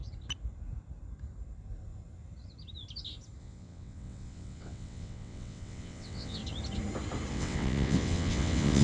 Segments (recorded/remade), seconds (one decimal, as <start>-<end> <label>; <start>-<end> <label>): 0.0-3.4 recorded; 3.4-6.4 remade; 6.4-7.3 recorded; 7.3-8.8 remade